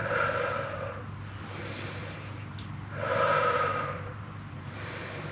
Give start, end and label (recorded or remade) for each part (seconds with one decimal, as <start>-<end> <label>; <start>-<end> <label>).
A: 0.0-1.0 remade; 1.0-2.0 recorded; 2.0-5.3 remade

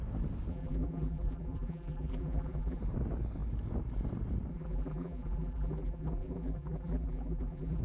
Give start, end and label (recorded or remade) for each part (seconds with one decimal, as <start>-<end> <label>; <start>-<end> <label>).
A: 0.0-0.5 recorded; 0.5-2.8 remade; 2.8-4.5 recorded; 4.5-7.8 remade

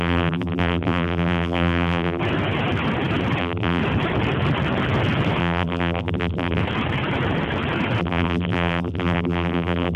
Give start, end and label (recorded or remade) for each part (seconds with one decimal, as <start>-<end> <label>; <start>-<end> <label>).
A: 0.0-2.2 remade; 2.2-3.4 recorded; 3.4-3.8 remade; 3.8-5.4 recorded; 5.4-6.6 remade; 6.6-8.0 recorded; 8.0-10.0 remade